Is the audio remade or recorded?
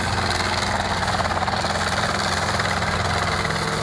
recorded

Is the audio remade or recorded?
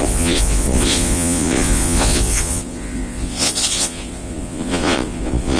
remade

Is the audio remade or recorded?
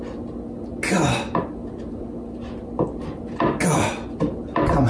recorded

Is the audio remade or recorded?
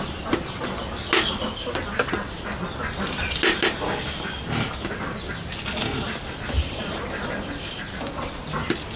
recorded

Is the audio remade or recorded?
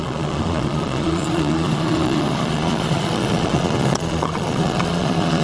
remade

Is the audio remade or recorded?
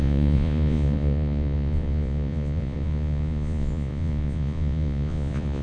remade